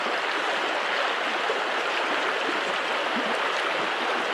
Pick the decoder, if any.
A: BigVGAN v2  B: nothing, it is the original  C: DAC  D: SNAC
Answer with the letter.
B